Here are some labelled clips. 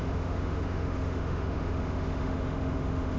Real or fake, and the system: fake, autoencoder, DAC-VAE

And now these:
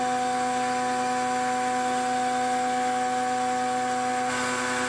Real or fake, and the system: real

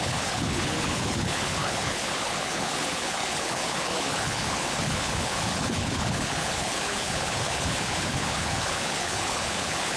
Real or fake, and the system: fake, codec, HILCodec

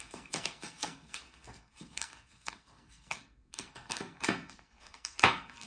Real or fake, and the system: fake, codec, SNAC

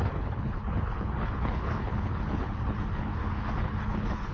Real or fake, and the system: fake, codec, HILCodec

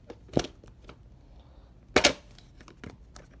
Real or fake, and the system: real